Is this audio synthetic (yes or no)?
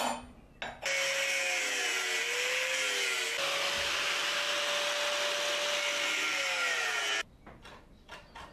no